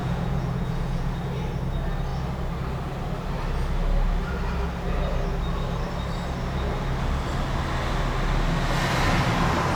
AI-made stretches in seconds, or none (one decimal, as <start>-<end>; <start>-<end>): 0.0-1.1

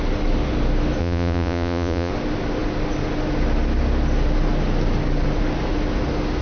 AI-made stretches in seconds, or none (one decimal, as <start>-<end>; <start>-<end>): 1.0-2.1

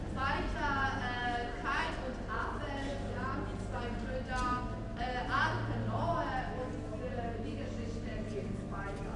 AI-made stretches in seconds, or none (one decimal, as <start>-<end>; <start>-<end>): 8.1-9.2